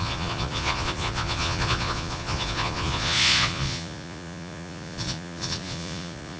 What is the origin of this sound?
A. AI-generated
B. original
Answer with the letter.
A